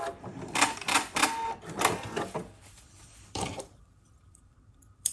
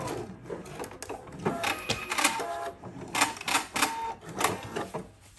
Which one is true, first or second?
second